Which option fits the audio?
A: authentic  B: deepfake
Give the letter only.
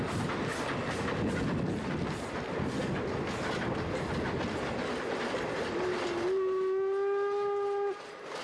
A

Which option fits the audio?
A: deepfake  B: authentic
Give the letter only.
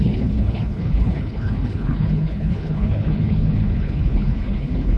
A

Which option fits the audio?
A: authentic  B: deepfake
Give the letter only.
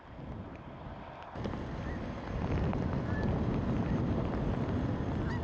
A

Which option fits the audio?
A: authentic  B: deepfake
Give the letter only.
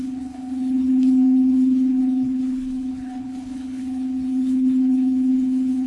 B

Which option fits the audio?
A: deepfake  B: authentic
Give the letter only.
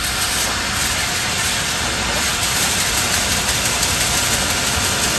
B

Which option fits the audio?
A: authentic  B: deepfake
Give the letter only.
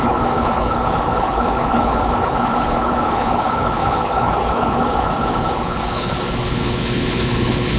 B